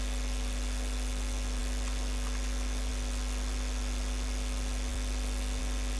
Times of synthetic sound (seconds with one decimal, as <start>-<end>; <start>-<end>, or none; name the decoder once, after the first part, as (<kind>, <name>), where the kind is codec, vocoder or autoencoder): none